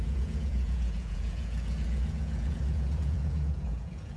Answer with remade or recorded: remade